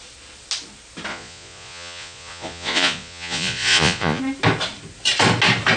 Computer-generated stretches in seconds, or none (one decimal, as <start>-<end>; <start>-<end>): 1.1-4.2